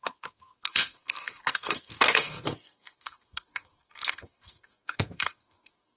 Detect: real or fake fake